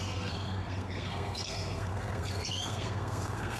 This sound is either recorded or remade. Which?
remade